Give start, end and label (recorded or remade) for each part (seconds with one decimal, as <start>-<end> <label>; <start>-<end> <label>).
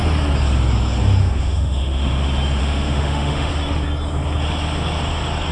0.0-1.2 recorded; 1.2-2.2 remade; 2.2-2.6 recorded; 2.6-3.5 remade; 3.5-5.5 recorded